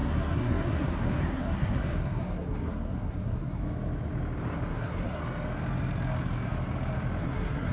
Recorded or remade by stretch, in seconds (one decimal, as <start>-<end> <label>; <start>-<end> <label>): 0.0-3.6 remade; 3.6-4.7 recorded; 4.7-5.2 remade; 5.2-7.2 recorded; 7.2-7.7 remade